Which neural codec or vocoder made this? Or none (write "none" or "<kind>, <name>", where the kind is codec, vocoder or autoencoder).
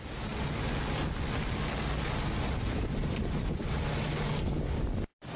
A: none